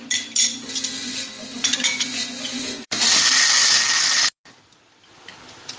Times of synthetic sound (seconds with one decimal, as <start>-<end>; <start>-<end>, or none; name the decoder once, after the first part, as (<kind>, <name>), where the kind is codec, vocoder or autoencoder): 1.0-3.0 (vocoder, Vocos)